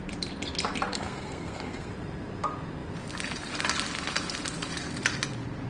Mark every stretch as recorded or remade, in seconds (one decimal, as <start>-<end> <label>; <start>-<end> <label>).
0.0-0.9 recorded; 0.9-1.9 remade; 1.9-5.7 recorded